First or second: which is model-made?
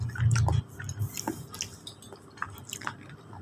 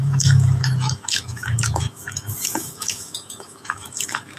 second